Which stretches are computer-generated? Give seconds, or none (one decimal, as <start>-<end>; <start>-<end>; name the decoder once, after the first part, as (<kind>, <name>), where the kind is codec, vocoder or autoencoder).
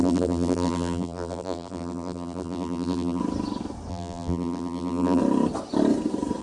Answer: 0.0-3.2 (vocoder, BigVGAN v2); 3.9-5.2